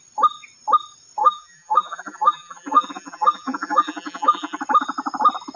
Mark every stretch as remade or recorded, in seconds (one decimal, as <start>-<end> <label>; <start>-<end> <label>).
0.0-1.2 recorded; 1.2-4.6 remade; 4.6-5.6 recorded